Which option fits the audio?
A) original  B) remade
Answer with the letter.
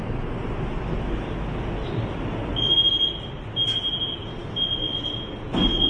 A